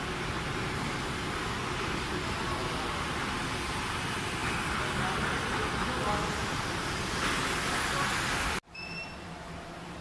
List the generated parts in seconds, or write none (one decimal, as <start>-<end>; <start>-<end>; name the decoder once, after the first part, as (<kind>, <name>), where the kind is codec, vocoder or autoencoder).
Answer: none